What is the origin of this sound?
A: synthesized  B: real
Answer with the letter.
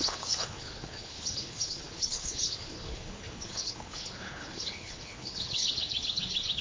A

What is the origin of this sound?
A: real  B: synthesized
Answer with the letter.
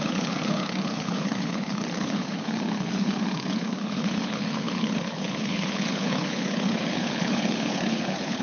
B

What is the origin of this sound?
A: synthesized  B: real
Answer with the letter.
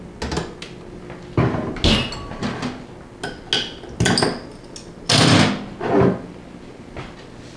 B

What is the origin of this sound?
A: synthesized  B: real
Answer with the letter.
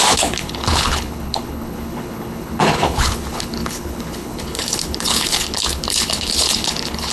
A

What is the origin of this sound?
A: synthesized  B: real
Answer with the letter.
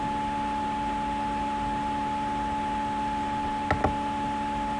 B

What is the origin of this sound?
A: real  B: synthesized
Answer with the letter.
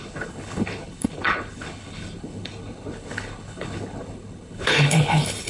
B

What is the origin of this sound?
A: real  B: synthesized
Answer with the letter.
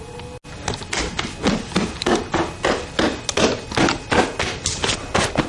A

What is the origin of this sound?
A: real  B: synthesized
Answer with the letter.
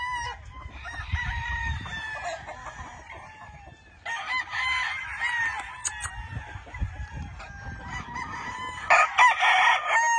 A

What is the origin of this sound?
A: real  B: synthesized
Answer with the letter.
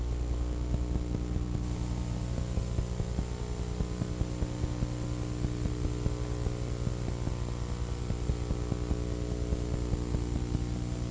A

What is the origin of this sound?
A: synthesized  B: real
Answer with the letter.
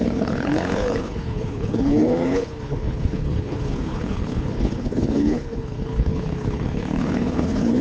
A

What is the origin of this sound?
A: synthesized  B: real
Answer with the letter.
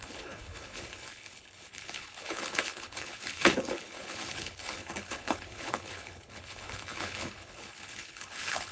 A